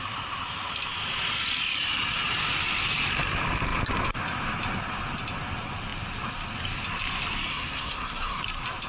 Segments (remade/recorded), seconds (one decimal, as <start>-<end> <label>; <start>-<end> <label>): 0.0-7.5 recorded; 7.5-8.4 remade; 8.4-8.9 recorded